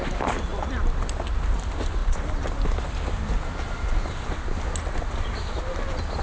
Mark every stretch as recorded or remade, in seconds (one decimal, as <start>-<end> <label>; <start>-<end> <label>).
0.0-6.2 recorded